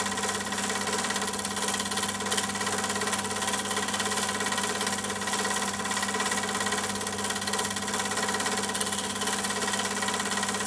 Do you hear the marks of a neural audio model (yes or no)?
no